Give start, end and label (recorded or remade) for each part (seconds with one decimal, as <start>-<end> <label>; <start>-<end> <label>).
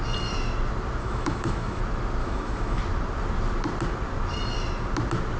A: 0.0-1.0 recorded; 1.0-1.8 remade; 1.8-2.2 recorded; 2.2-2.8 remade; 2.8-5.4 recorded